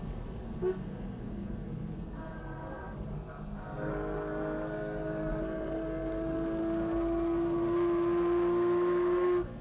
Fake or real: fake